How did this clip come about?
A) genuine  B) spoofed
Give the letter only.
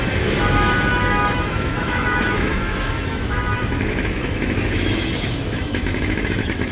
B